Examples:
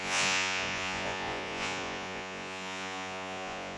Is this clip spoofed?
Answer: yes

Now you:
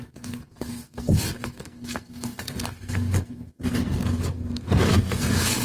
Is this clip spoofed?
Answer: yes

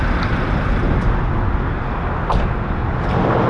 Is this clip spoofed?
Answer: no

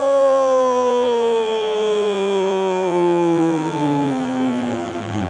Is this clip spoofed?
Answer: yes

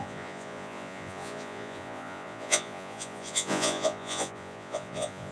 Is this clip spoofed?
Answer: yes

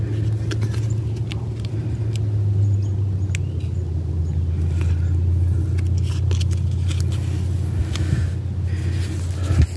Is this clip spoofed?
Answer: no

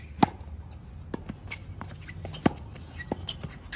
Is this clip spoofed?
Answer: no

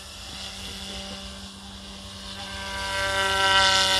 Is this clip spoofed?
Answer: no